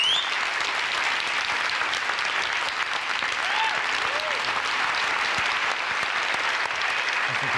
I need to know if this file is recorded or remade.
recorded